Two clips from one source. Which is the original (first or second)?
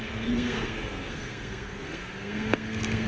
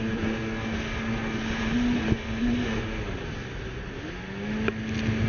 second